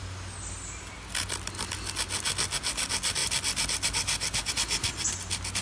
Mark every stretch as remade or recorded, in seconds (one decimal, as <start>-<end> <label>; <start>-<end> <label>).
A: 0.0-5.6 recorded